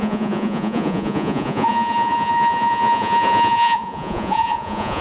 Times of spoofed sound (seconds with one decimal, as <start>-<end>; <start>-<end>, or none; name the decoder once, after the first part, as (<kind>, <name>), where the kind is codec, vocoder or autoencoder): 0.0-5.0 (vocoder, Vocos)